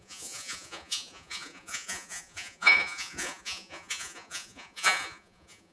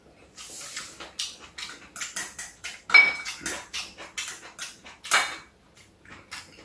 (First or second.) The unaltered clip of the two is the second